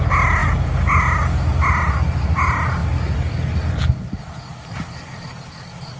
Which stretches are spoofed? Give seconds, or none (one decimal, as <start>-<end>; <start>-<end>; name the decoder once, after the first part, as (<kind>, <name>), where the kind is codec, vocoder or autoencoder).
none